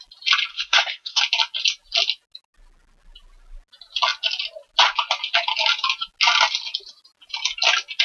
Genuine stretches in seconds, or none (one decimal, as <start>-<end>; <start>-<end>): 0.0-0.5; 1.2-8.0